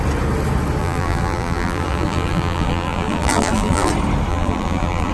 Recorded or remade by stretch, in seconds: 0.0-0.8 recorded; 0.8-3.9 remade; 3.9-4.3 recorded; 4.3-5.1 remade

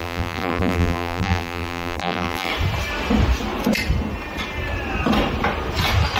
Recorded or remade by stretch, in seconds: 0.0-2.5 remade; 2.5-6.2 recorded

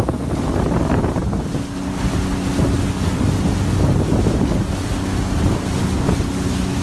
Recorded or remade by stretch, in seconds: 0.0-6.8 recorded